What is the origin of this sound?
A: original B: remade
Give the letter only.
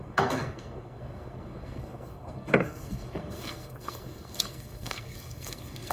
B